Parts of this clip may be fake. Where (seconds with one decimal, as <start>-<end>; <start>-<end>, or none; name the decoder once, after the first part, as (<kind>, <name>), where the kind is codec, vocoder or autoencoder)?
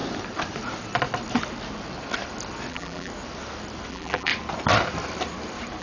2.7-3.1 (vocoder, BigVGAN v2); 3.9-4.3